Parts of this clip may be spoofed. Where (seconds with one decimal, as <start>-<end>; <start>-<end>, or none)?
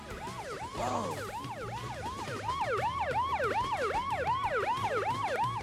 none